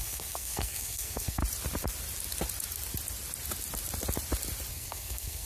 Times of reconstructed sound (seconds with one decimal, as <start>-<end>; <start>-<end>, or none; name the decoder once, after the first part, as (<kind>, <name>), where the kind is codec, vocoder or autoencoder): 0.0-1.4 (codec, SNAC); 4.7-5.5